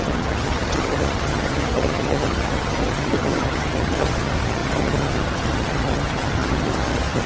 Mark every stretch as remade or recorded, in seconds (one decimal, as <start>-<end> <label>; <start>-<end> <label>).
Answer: 0.0-7.3 remade